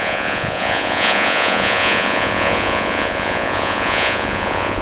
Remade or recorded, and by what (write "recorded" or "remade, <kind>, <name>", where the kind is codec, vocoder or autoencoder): remade, vocoder, Vocos